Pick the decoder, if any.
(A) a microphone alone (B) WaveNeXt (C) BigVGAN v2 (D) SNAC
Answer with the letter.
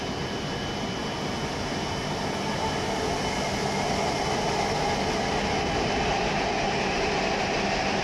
A